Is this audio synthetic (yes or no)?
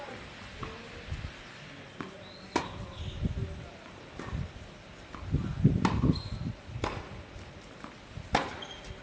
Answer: no